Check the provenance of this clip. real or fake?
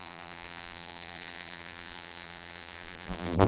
fake